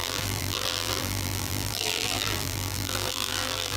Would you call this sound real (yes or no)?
no